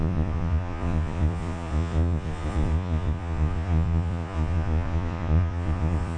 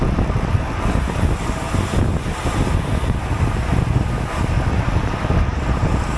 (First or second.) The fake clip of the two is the first